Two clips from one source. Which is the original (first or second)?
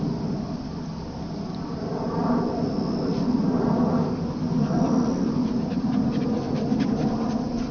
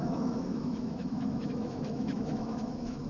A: first